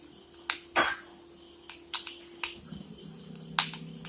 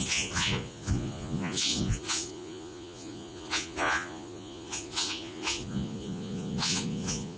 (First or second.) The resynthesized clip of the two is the second